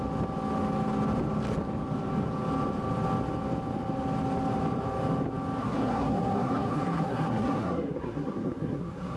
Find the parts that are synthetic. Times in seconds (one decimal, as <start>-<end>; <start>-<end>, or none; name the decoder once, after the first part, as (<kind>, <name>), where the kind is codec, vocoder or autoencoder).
5.6-9.2 (codec, SNAC)